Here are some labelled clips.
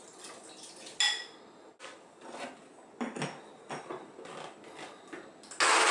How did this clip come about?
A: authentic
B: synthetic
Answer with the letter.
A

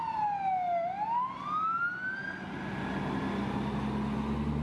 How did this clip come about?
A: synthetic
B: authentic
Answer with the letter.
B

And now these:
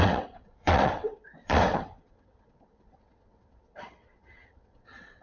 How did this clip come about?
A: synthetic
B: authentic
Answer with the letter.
A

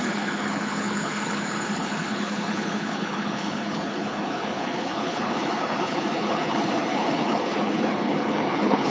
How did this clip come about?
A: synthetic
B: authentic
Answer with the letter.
A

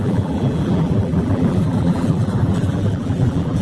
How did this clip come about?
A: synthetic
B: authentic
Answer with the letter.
A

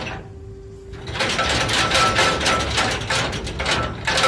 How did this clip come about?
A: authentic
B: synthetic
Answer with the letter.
A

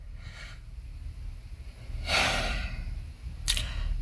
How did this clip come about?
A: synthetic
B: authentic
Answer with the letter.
B